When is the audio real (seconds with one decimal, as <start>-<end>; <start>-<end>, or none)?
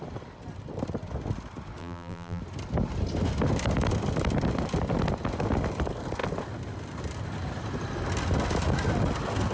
0.0-1.8; 2.4-9.5